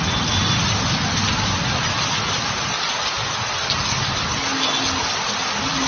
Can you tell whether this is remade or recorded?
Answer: recorded